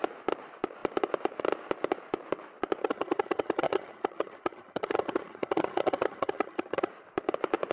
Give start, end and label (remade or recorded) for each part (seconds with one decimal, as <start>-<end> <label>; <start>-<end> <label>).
0.0-2.8 recorded; 2.8-6.9 remade; 6.9-7.7 recorded